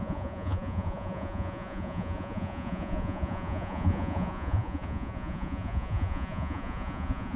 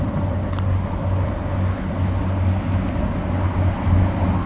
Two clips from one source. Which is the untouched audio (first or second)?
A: second